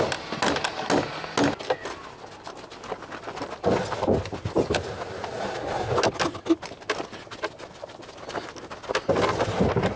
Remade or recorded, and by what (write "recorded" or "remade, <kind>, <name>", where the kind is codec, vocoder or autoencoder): recorded